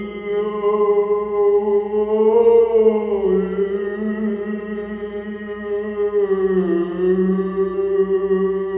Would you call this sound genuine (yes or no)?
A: yes